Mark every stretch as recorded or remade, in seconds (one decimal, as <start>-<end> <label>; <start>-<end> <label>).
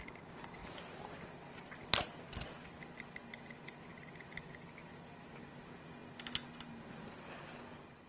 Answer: 0.0-8.1 recorded